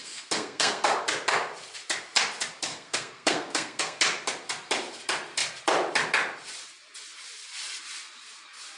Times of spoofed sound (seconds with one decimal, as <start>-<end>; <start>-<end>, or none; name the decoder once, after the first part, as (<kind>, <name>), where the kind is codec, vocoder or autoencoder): 0.0-0.9 (codec, SNAC); 2.7-4.0

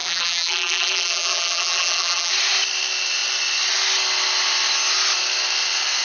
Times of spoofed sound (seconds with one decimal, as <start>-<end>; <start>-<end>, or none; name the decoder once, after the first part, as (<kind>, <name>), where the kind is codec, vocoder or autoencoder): 0.0-2.3 (vocoder, BigVGAN v2)